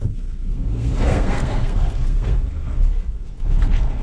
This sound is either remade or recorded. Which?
remade